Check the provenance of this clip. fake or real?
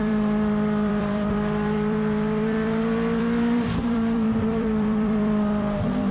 fake